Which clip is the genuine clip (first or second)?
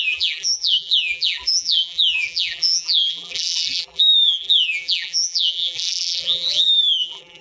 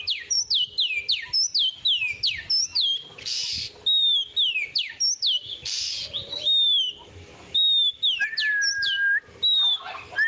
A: second